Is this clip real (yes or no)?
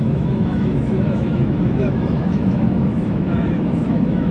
no